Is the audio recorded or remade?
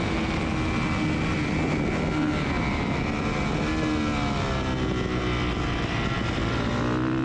recorded